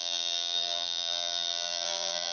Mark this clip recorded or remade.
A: remade